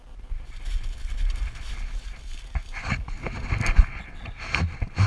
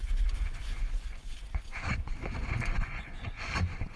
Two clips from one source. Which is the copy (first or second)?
second